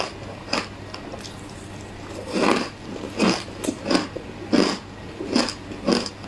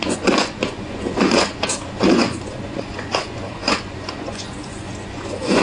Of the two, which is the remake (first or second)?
second